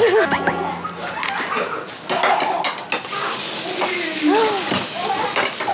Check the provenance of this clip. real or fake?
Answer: real